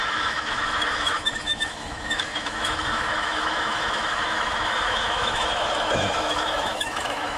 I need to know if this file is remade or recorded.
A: remade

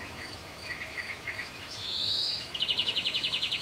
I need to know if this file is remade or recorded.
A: remade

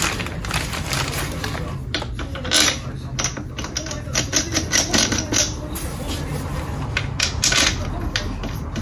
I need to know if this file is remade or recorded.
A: recorded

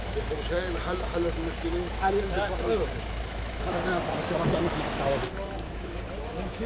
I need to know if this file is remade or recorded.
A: remade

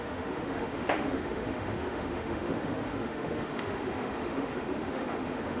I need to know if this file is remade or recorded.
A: remade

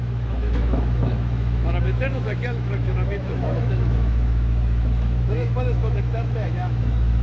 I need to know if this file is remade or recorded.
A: remade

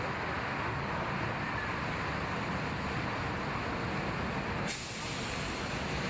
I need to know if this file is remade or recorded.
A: recorded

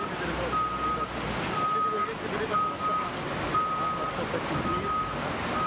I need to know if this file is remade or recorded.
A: recorded